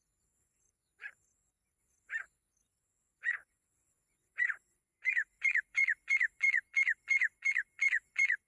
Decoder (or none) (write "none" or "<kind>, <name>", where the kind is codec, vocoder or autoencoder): vocoder, Vocos